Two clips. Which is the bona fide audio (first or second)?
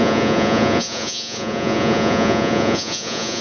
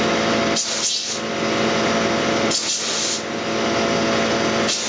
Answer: second